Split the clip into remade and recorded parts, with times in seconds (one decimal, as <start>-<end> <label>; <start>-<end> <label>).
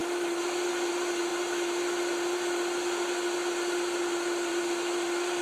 0.0-5.4 recorded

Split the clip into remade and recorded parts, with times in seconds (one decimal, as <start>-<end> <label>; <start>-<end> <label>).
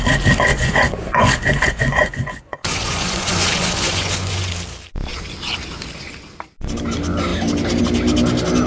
0.0-0.5 recorded; 0.5-4.5 remade; 4.5-8.7 recorded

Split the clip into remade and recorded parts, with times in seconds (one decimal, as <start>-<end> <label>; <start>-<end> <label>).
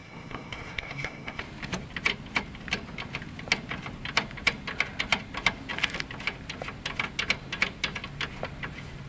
0.0-1.4 remade; 1.4-9.1 recorded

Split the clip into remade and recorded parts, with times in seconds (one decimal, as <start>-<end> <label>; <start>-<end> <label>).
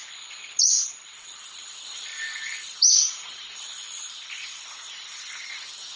0.0-1.2 recorded; 1.2-6.0 remade